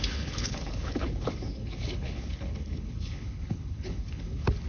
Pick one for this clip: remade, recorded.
remade